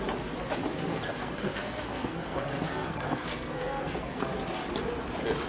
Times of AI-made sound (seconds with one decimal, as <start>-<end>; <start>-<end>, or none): 0.9-4.2